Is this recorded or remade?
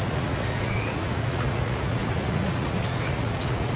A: remade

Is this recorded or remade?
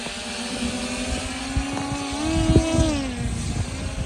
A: recorded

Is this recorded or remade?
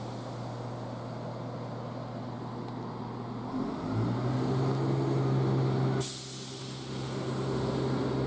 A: recorded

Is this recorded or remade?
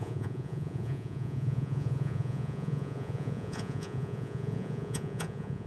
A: remade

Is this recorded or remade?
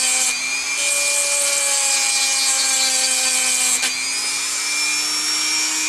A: recorded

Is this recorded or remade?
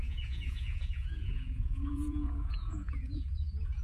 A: remade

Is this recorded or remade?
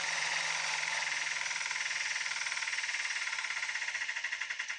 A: remade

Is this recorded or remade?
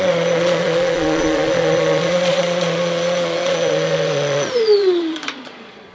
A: remade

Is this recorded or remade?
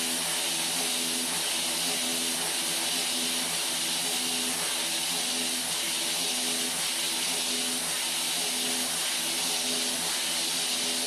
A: recorded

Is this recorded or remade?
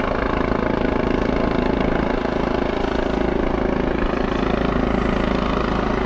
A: recorded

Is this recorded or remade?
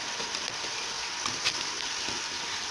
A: recorded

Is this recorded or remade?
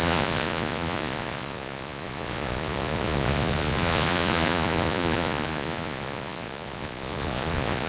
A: remade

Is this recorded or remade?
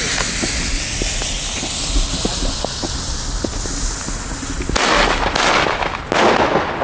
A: recorded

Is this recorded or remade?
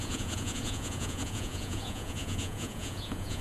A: remade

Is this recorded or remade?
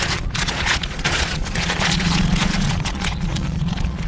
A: remade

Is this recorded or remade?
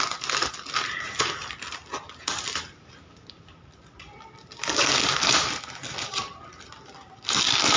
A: recorded